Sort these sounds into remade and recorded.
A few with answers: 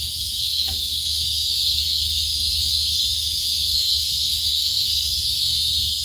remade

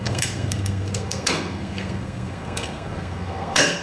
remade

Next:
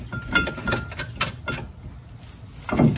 recorded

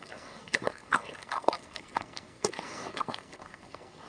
remade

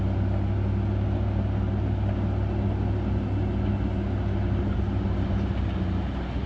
recorded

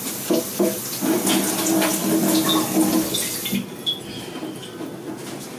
recorded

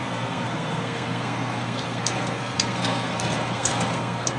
remade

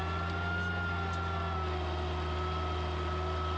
recorded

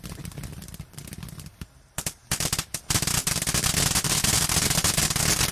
recorded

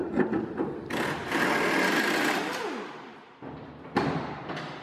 recorded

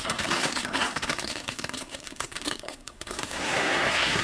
remade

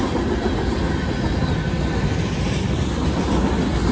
recorded